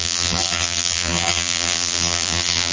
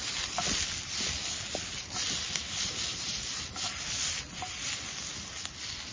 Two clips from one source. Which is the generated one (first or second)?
first